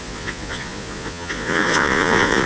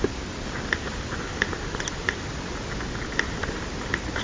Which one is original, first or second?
second